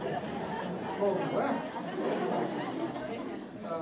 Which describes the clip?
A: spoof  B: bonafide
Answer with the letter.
B